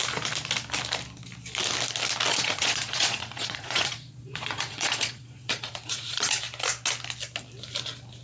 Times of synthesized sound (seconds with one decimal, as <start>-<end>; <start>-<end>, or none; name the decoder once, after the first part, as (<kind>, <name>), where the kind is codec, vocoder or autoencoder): 2.3-6.3 (vocoder, Vocos)